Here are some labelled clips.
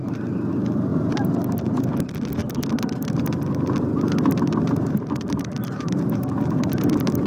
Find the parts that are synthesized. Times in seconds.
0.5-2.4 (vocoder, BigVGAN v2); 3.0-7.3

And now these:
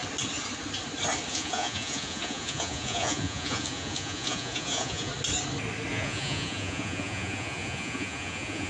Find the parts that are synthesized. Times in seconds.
1.3-5.1 (vocoder, Vocos); 5.9-8.7

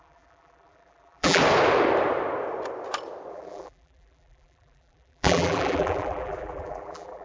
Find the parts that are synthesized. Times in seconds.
0.0-1.4 (vocoder, BigVGAN v2); 3.3-7.2

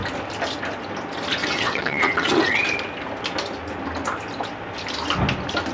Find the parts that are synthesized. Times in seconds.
1.4-2.6 (vocoder, WaveNeXt)

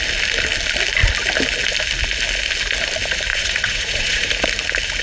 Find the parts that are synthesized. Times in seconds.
3.3-4.3 (vocoder, Vocos)

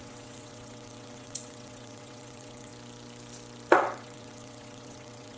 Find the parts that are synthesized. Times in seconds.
0.0-2.7 (vocoder, WaveNeXt); 3.7-5.4